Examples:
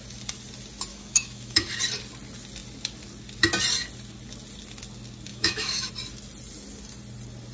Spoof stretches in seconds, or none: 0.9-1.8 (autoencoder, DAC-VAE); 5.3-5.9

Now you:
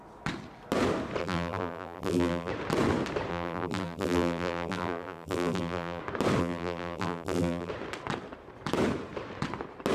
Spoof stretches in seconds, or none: 1.2-2.5 (vocoder, BigVGAN v2); 3.3-6.0; 6.4-7.7

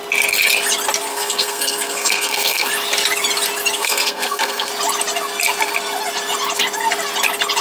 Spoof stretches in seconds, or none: 1.1-2.7 (codec, SNAC); 3.8-4.7

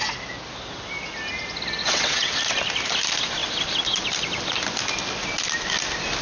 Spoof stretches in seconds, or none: 1.8-2.4 (vocoder, WaveNeXt)